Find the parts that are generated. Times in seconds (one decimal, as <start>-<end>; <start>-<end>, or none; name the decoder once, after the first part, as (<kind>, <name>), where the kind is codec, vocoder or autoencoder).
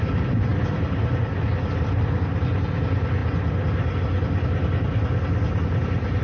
none